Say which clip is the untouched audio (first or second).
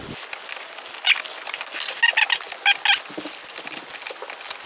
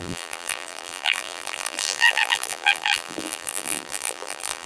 first